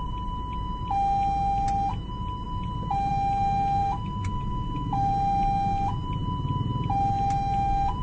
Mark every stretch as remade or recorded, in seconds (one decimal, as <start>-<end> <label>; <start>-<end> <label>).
0.0-3.8 recorded; 3.8-5.1 remade; 5.1-8.0 recorded